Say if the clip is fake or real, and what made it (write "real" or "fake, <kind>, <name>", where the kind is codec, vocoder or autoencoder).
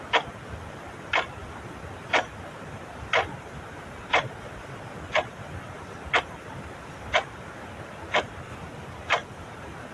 real